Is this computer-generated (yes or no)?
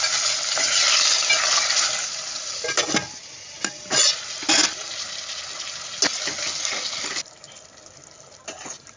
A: no